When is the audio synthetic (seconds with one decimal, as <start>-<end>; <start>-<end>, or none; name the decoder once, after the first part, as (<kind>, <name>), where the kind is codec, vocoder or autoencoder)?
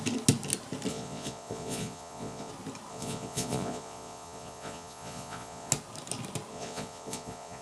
0.9-2.5 (vocoder, Vocos); 2.9-5.7; 6.5-7.6